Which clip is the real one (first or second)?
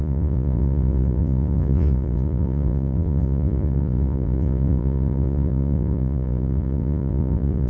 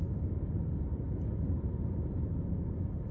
second